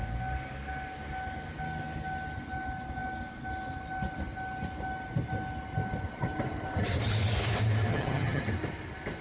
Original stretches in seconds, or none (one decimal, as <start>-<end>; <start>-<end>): 0.0-7.9; 8.4-9.2